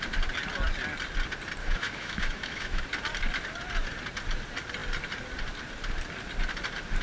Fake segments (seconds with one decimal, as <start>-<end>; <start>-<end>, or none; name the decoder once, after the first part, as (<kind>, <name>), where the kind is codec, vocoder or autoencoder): 1.6-2.8 (autoencoder, DAC-VAE)